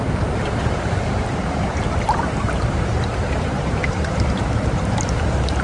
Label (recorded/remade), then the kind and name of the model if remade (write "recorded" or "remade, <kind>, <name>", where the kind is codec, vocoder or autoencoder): remade, vocoder, BigVGAN v2